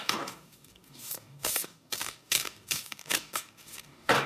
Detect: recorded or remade remade